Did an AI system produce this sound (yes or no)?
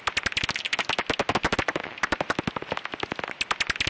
no